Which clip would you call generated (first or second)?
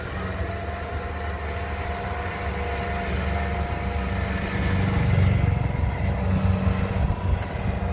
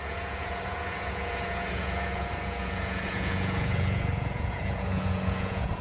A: second